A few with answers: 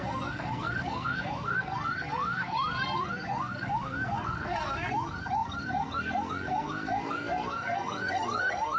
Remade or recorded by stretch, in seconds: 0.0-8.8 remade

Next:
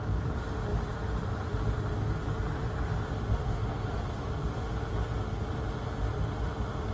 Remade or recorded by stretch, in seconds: 0.0-3.4 recorded; 3.4-4.0 remade; 4.0-6.9 recorded